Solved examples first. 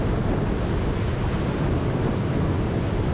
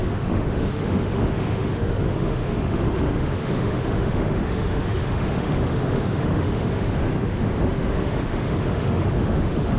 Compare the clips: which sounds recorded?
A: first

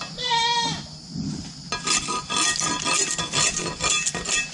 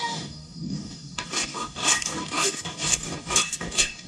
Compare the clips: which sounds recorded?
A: first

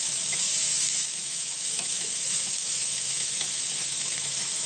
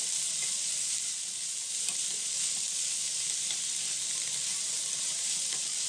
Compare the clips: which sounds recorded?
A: second